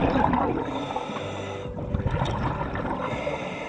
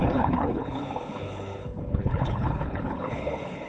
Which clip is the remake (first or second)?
second